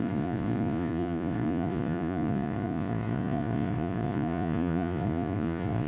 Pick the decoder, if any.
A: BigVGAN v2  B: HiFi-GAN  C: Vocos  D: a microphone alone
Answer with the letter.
C